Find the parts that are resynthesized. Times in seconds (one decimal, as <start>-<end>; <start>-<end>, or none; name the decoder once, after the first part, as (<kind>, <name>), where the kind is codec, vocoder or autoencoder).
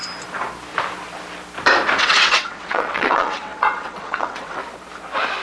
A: 2.0-4.6 (vocoder, WaveNeXt)